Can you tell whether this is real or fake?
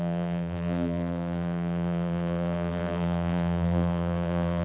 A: fake